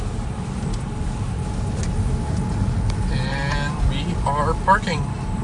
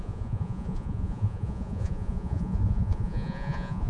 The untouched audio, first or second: first